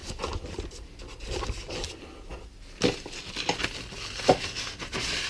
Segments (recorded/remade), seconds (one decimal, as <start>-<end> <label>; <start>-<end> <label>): 0.0-5.3 recorded